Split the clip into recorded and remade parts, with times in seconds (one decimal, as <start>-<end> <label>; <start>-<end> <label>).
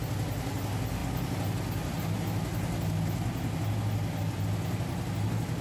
0.0-5.6 recorded